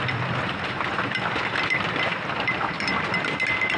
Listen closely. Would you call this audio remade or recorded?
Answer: recorded